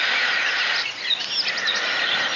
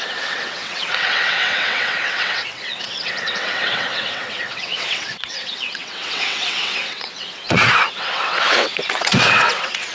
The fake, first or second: second